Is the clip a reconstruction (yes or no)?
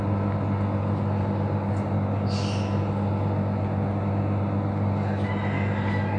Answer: no